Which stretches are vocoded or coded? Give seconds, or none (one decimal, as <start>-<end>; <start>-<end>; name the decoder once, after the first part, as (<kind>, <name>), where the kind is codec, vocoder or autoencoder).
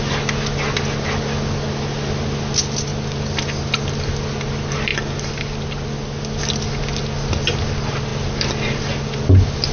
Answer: none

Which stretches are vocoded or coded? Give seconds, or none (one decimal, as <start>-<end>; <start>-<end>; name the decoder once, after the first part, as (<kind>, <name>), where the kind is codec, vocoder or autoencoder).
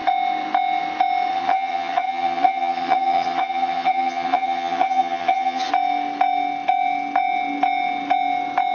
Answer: 1.3-5.7 (vocoder, HiFi-GAN)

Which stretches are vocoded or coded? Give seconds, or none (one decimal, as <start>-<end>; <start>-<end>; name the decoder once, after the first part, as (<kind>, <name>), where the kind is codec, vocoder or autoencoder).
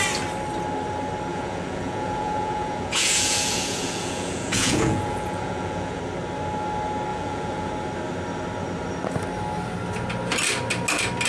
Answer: 1.3-6.0 (vocoder, Vocos); 7.1-7.7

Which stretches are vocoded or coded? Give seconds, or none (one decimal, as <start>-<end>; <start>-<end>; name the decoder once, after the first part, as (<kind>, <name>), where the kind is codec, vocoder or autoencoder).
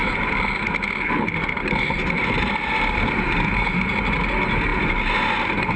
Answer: 0.0-3.5 (vocoder, BigVGAN v2)